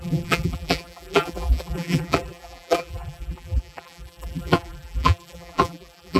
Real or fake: fake